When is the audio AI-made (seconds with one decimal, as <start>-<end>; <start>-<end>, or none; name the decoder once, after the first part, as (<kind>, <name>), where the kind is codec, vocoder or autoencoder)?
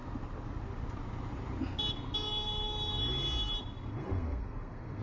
3.9-5.0 (codec, SNAC)